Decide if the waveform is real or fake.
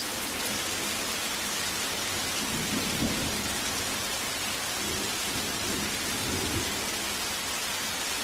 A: real